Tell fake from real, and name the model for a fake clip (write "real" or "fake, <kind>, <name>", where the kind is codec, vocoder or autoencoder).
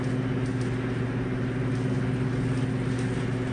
real